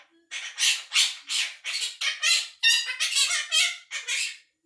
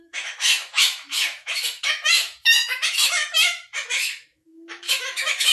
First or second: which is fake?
second